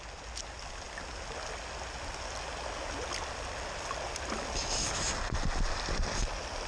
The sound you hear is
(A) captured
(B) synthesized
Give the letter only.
A